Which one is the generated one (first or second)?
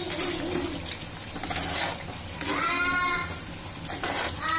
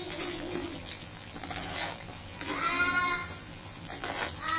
second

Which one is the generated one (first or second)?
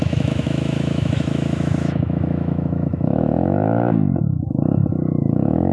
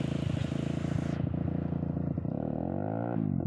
first